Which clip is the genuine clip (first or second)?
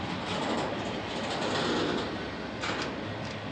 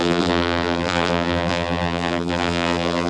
first